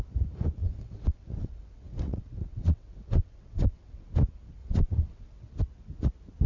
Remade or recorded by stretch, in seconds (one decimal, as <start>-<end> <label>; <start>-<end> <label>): 0.0-0.6 recorded; 0.6-4.1 remade; 4.1-4.6 recorded; 4.6-5.5 remade; 5.5-6.5 recorded